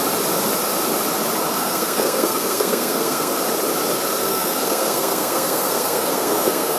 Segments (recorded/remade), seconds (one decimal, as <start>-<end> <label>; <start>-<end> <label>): 0.0-1.5 recorded; 1.5-3.3 remade; 3.3-4.2 recorded; 4.2-6.8 remade

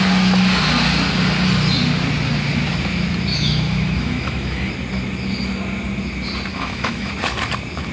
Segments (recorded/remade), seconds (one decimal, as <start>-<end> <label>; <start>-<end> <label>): 0.0-3.3 recorded; 3.3-4.7 remade; 4.7-6.5 recorded; 6.5-7.1 remade; 7.1-7.9 recorded

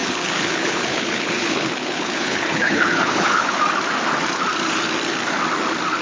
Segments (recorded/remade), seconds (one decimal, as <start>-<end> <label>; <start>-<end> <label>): 0.0-3.6 remade; 3.6-6.0 recorded

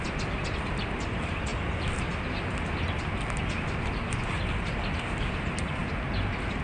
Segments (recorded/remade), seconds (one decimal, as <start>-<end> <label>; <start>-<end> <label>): 0.0-6.6 recorded

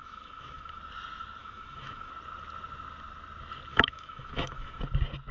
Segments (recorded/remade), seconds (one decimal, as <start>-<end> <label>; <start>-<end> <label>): 0.0-0.8 remade; 0.8-1.4 recorded; 1.4-2.1 remade; 2.1-3.7 recorded; 3.7-4.8 remade; 4.8-5.3 recorded

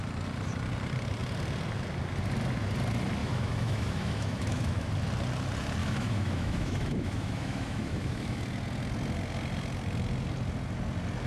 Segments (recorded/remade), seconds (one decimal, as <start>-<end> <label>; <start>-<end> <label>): 0.0-3.2 recorded; 3.2-4.9 remade; 4.9-5.8 recorded; 5.8-8.4 remade; 8.4-11.3 recorded

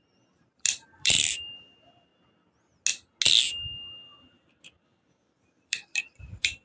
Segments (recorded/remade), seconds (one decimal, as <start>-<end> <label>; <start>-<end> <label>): 0.0-2.1 remade; 2.1-4.6 recorded; 4.6-6.6 remade

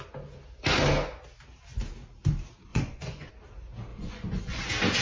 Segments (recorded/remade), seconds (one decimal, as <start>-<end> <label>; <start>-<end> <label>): 0.0-2.7 recorded; 2.7-3.3 remade; 3.3-3.9 recorded; 3.9-4.6 remade; 4.6-5.0 recorded